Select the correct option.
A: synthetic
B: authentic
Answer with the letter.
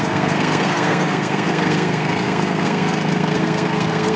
A